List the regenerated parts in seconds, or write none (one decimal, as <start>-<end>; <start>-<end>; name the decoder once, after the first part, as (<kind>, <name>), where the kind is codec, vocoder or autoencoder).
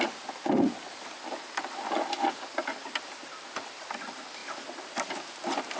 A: none